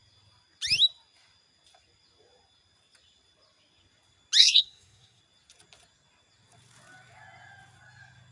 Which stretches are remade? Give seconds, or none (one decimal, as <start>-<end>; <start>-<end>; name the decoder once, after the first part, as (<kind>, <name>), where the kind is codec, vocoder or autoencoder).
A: 4.4-5.2 (codec, SNAC)

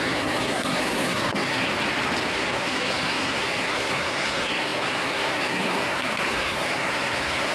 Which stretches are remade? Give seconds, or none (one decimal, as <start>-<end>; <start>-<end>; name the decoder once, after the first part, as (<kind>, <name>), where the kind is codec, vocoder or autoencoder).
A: 0.0-1.7 (codec, SNAC); 2.3-7.5

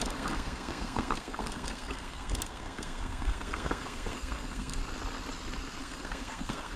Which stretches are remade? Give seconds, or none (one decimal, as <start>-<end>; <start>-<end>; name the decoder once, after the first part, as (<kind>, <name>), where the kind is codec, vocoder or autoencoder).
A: 0.0-4.8 (codec, SNAC); 5.8-6.8

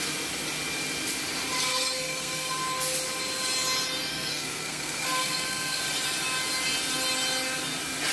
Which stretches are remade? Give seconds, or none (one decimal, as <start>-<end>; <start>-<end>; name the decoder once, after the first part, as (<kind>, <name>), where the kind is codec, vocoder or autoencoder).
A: 1.7-2.5 (codec, SNAC); 4.1-5.8

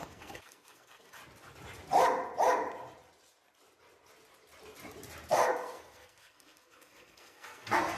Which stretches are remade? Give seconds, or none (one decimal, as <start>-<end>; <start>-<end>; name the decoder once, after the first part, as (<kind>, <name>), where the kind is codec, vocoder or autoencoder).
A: 0.0-1.2 (codec, SNAC); 5.3-8.0

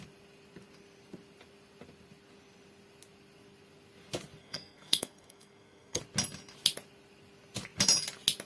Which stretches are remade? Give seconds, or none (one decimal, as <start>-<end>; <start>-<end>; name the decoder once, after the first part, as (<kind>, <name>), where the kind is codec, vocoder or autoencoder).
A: 4.4-6.0 (codec, SNAC)

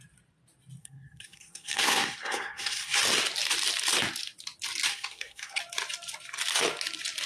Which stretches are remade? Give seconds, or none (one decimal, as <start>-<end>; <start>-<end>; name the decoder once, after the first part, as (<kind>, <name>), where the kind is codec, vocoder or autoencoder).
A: 0.8-3.0 (codec, SNAC); 4.9-5.6